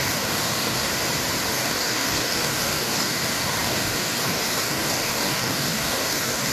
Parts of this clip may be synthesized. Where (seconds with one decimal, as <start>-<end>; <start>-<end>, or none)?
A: 0.0-0.9; 1.5-6.5